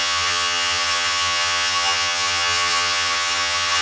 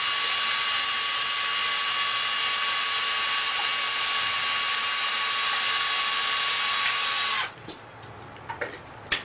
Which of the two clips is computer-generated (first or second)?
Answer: first